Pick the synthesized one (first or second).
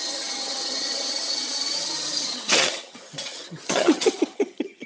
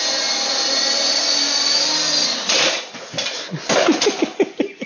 first